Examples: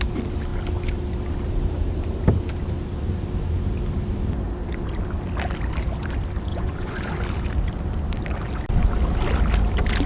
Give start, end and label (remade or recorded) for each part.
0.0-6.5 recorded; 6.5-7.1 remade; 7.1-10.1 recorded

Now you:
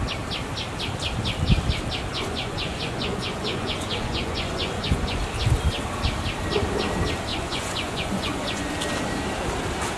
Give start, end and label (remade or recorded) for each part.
0.0-2.1 recorded; 2.1-5.2 remade; 5.2-7.3 recorded; 7.3-8.7 remade; 8.7-10.0 recorded

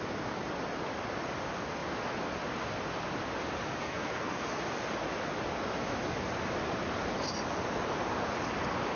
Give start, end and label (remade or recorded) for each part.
0.0-3.8 recorded; 3.8-4.6 remade; 4.6-9.0 recorded

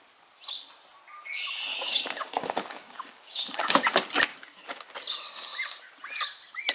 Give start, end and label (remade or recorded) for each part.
0.0-1.7 recorded; 1.7-3.9 remade; 3.9-4.3 recorded; 4.3-4.9 remade; 4.9-6.7 recorded

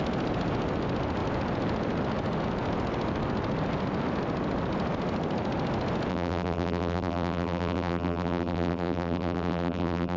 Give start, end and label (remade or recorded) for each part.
0.0-6.1 recorded; 6.1-10.2 remade

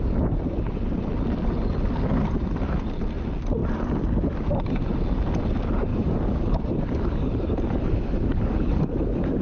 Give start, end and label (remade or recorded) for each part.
0.0-5.9 recorded; 5.9-9.4 remade

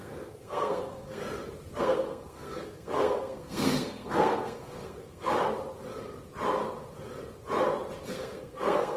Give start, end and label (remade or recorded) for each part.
0.0-1.2 remade; 1.2-1.8 recorded; 1.8-5.3 remade; 5.3-8.1 recorded; 8.1-9.0 remade